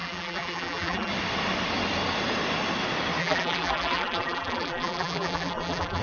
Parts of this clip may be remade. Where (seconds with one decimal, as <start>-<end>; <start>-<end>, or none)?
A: 0.0-1.1; 3.2-6.0